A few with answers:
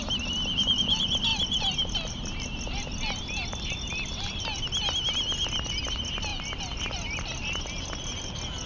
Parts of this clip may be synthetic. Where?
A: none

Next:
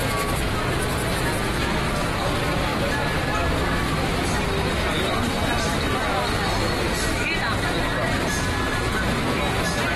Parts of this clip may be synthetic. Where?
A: none

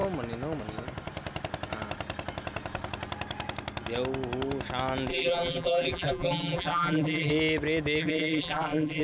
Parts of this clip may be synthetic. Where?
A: 5.1-7.3 (vocoder, BigVGAN v2); 8.0-9.0

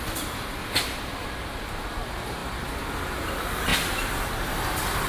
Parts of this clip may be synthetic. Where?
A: none

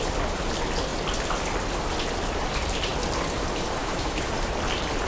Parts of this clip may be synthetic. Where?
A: 3.8-4.3 (autoencoder, DAC-VAE)